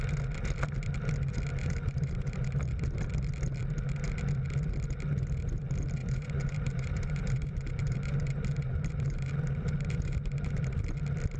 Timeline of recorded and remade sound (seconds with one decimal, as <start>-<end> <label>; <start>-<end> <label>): 0.0-1.6 recorded; 1.6-2.7 remade; 2.7-6.0 recorded; 6.0-10.8 remade; 10.8-11.4 recorded